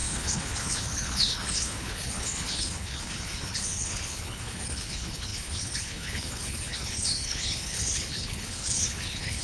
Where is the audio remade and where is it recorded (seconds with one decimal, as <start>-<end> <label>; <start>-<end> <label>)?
0.0-9.4 remade